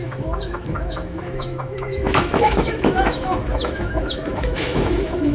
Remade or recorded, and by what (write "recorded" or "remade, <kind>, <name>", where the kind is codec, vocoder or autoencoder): remade, autoencoder, DAC-VAE